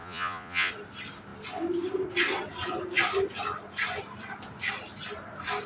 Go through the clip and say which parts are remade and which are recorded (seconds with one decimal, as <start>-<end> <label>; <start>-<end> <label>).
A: 0.0-0.7 remade; 0.7-5.7 recorded